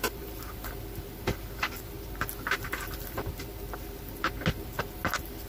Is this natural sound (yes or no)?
yes